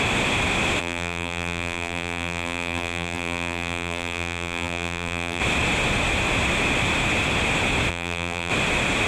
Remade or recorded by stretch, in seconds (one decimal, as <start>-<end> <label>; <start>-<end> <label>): 0.0-0.8 recorded; 0.8-5.4 remade; 5.4-7.9 recorded; 7.9-8.5 remade; 8.5-9.1 recorded